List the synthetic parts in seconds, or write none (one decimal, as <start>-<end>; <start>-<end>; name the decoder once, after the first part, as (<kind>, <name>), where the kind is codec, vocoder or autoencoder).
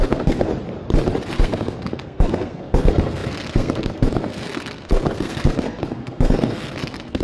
0.0-0.5 (codec, SNAC); 1.3-7.2